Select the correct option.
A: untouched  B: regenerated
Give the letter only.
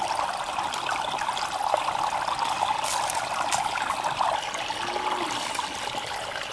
A